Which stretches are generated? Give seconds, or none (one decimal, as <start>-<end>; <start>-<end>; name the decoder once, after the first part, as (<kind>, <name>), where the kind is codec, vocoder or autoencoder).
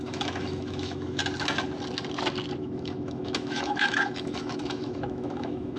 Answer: 0.0-1.2 (autoencoder, DAC-VAE); 2.6-5.8